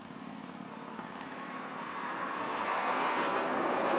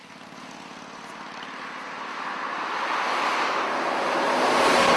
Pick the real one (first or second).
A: second